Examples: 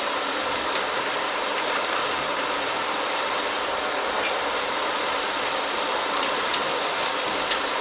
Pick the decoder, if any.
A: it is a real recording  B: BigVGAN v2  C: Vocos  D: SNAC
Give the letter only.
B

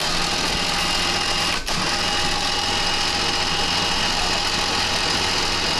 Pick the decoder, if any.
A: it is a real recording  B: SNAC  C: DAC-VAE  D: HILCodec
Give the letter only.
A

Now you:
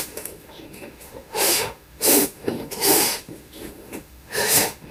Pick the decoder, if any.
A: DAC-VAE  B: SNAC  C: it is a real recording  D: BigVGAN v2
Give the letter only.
A